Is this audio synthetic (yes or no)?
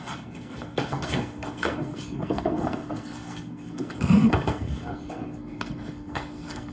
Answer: yes